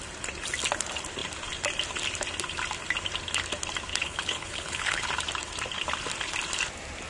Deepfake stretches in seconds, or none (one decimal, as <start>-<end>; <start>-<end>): 3.9-5.1